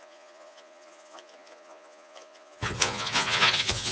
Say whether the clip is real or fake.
fake